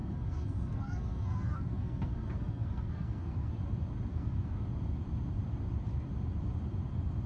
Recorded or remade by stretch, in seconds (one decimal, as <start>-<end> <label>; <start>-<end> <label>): 0.0-3.5 remade; 3.5-4.1 recorded; 4.1-4.6 remade; 4.6-7.3 recorded